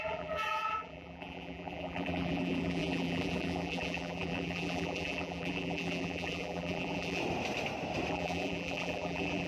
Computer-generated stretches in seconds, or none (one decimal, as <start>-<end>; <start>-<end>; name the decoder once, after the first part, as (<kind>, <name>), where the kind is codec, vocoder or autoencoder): 0.0-7.2 (vocoder, BigVGAN v2); 8.1-9.5